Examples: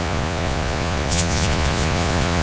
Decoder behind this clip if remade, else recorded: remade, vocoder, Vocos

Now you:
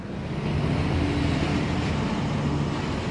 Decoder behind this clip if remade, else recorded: recorded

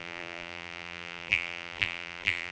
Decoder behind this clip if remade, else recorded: remade, vocoder, BigVGAN v2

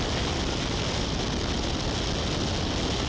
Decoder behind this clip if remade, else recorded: recorded